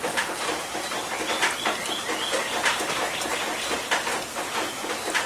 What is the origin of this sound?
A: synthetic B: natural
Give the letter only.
B